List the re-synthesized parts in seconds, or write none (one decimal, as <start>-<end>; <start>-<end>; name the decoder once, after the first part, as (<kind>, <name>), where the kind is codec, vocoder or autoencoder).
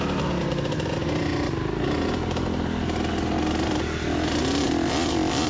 none